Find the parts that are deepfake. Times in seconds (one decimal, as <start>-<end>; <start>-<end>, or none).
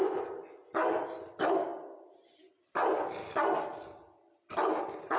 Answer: none